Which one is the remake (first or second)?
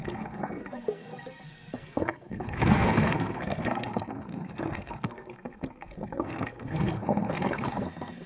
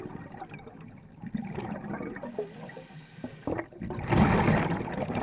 first